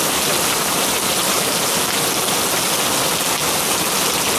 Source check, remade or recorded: recorded